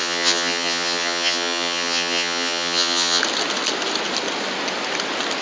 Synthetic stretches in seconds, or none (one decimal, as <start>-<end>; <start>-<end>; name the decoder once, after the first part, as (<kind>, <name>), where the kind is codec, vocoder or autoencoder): 0.0-3.2 (vocoder, HiFi-GAN)

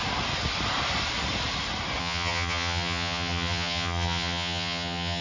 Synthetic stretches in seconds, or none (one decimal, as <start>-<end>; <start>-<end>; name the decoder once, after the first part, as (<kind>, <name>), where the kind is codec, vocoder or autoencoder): 2.0-5.2 (vocoder, HiFi-GAN)